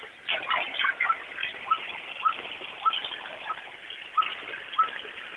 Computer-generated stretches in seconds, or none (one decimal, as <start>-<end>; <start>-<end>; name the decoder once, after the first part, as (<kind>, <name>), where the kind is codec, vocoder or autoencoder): none